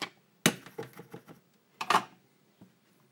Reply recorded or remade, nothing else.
recorded